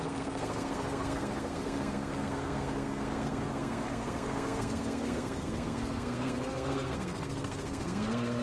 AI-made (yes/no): yes